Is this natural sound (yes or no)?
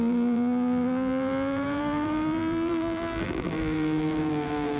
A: no